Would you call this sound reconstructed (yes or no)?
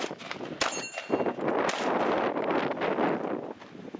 no